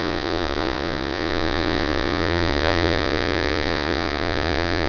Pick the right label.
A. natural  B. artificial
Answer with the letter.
B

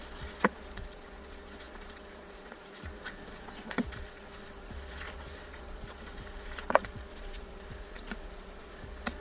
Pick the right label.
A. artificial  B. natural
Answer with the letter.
A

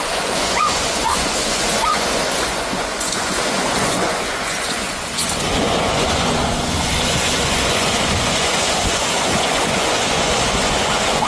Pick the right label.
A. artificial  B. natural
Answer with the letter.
A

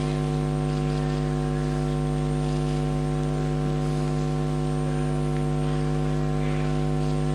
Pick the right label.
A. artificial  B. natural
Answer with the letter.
B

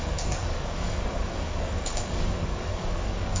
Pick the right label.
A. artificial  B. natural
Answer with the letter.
A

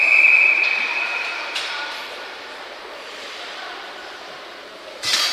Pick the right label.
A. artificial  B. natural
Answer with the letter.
A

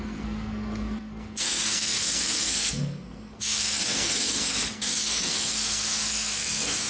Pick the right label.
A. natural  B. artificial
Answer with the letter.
B